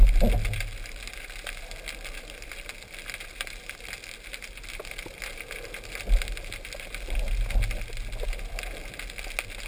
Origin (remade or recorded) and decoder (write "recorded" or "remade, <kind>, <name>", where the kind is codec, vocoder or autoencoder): recorded